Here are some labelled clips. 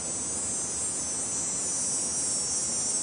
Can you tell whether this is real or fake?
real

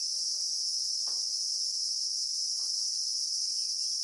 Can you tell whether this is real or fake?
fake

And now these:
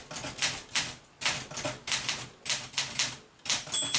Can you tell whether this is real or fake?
real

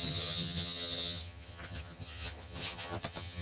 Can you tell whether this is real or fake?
fake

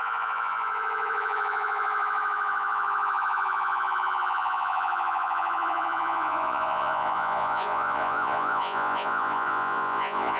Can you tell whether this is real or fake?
fake